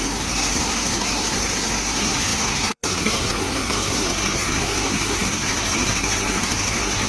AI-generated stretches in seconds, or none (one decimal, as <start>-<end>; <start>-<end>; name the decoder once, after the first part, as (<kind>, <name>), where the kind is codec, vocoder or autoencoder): 0.0-7.1 (codec, SNAC)